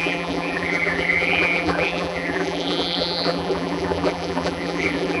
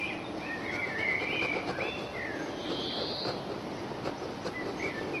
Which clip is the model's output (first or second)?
first